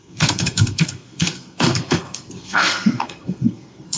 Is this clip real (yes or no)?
no